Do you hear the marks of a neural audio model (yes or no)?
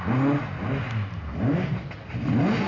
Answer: no